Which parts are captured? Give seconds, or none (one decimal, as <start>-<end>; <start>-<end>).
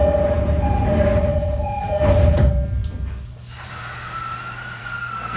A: 0.0-4.8